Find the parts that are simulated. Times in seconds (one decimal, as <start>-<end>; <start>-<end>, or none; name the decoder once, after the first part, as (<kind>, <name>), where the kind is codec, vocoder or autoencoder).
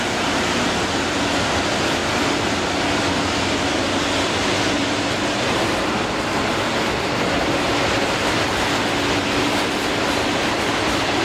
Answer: none